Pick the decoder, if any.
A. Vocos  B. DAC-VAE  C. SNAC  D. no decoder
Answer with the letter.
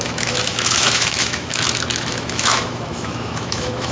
B